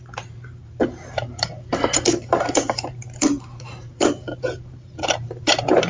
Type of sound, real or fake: fake